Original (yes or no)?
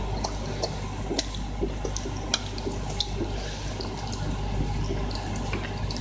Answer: yes